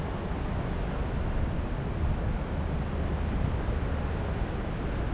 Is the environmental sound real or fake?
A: real